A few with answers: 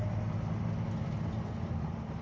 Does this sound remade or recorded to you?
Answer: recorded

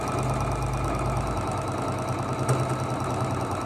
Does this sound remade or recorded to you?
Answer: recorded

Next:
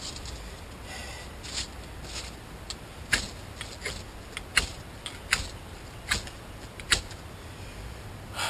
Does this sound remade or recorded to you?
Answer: recorded